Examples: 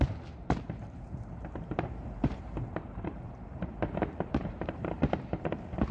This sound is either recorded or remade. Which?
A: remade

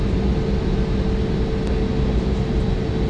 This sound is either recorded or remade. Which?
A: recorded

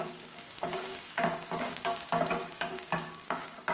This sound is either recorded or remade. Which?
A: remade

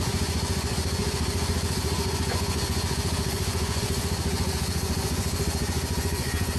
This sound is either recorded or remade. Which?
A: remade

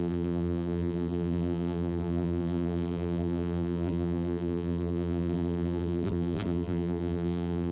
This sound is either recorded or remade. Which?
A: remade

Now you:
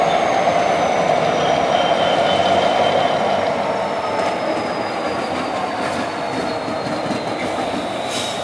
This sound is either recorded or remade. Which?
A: recorded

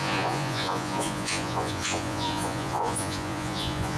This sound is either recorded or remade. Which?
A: remade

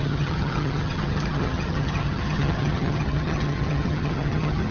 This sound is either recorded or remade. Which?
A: remade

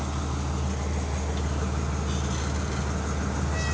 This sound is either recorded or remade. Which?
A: recorded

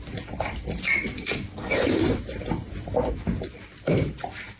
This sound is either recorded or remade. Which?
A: remade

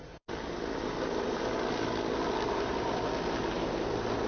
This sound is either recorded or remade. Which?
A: recorded